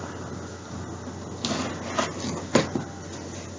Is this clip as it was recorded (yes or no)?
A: yes